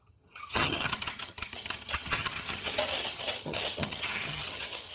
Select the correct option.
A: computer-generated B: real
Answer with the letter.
A